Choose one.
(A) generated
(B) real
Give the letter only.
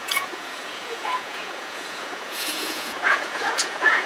A